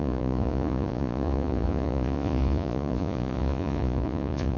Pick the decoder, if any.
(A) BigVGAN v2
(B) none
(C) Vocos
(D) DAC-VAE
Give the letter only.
C